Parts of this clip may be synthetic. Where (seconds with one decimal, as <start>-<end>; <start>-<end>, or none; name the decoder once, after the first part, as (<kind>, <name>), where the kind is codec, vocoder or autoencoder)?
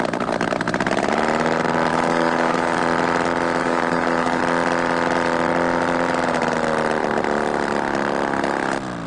1.9-2.8 (codec, DAC); 3.6-4.4